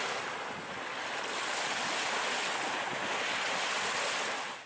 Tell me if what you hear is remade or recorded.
recorded